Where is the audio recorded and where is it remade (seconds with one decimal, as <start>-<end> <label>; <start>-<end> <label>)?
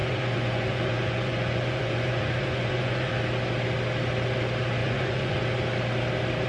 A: 0.0-3.1 remade; 3.1-4.8 recorded; 4.8-5.4 remade; 5.4-6.5 recorded